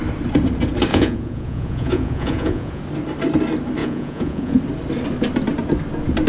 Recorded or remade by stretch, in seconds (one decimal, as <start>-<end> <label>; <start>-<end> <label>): 0.0-0.9 recorded; 0.9-2.8 remade; 2.8-3.8 recorded; 3.8-4.6 remade; 4.6-6.3 recorded